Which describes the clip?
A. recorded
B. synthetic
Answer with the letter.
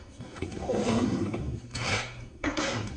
B